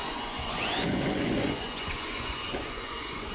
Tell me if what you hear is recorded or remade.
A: remade